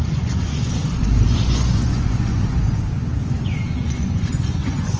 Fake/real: fake